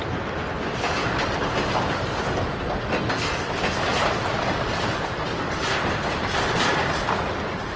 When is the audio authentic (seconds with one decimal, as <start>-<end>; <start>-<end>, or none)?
0.0-1.0; 2.2-3.9; 6.7-7.8